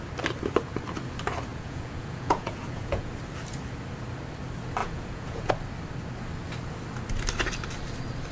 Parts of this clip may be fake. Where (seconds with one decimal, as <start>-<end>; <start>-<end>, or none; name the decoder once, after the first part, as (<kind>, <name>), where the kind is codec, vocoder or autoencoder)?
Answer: 1.5-3.1 (vocoder, Vocos); 4.8-5.5

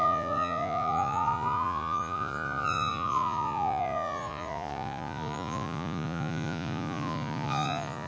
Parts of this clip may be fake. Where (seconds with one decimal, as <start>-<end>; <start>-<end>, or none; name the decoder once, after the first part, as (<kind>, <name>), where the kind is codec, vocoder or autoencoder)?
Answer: 0.0-8.1 (vocoder, Vocos)

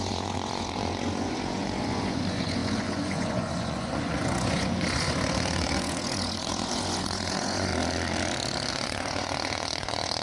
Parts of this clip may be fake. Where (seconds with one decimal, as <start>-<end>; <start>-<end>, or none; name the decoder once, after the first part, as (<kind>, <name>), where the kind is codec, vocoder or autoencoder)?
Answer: 0.0-7.7 (vocoder, Vocos); 8.7-10.2

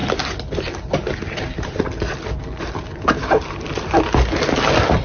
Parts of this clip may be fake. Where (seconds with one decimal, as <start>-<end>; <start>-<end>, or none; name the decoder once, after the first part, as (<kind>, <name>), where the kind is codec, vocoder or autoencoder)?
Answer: none

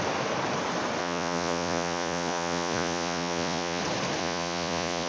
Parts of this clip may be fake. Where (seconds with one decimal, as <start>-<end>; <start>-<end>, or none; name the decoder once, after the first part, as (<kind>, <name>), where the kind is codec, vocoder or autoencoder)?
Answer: 1.0-3.8 (vocoder, Vocos); 4.2-5.1

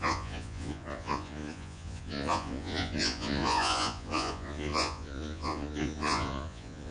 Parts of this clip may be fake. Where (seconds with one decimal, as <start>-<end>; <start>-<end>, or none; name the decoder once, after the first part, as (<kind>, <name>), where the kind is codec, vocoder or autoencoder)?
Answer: 0.0-6.9 (vocoder, Vocos)

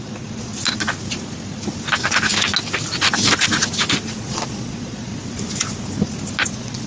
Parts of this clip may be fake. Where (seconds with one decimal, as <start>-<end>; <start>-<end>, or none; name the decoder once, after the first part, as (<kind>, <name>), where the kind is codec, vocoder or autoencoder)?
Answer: 0.0-0.5 (vocoder, Vocos); 4.0-5.1; 6.5-6.9

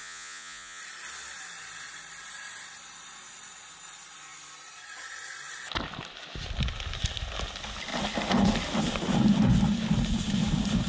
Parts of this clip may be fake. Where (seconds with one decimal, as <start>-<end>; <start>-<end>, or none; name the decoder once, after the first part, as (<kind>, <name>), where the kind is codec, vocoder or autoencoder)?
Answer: 0.0-0.8 (vocoder, Vocos)